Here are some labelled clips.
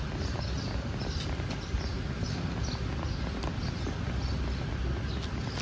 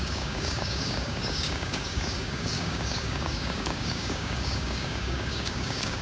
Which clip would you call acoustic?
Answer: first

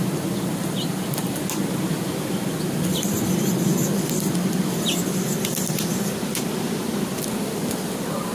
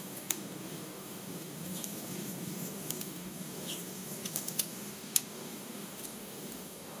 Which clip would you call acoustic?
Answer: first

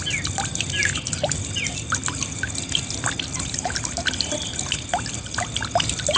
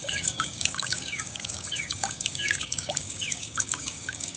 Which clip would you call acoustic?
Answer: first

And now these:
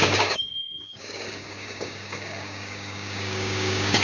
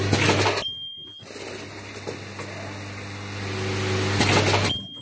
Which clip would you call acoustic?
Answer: second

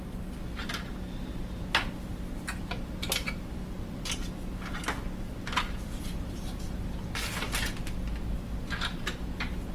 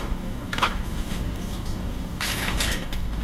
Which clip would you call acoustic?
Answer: first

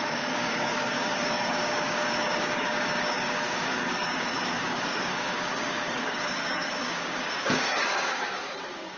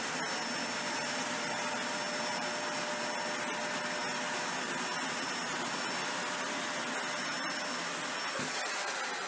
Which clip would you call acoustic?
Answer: second